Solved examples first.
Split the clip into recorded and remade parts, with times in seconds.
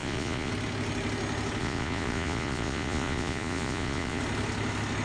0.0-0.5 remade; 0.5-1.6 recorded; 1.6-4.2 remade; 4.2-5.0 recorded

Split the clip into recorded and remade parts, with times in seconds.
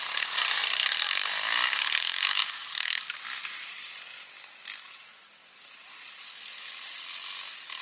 0.0-7.8 recorded